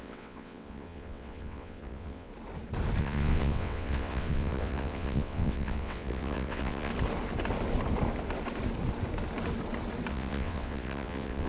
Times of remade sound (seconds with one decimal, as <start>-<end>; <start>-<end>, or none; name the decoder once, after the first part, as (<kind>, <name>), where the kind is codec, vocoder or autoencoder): 0.0-2.3 (vocoder, WaveNeXt); 3.0-6.9; 10.1-11.5